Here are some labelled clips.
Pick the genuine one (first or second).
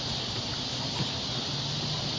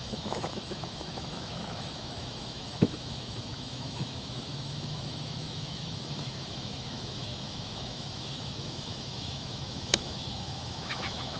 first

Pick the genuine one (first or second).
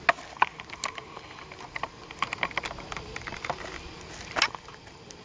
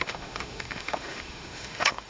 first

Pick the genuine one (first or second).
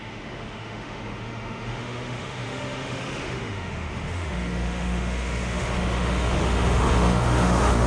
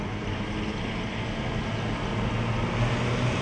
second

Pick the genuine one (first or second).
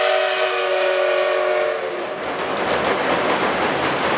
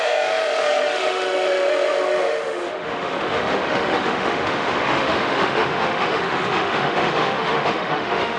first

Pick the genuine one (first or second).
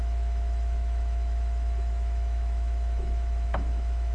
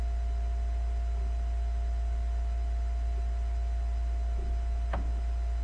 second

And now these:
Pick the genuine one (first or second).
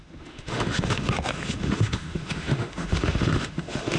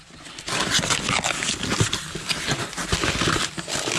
second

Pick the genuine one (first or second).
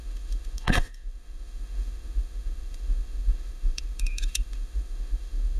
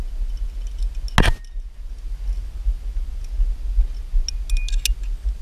second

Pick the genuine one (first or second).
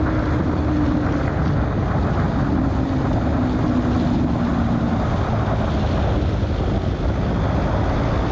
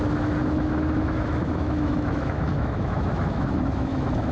first